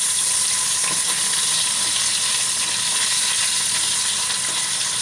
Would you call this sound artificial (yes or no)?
no